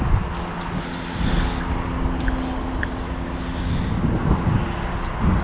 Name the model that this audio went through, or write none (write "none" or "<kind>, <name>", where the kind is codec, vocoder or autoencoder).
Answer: none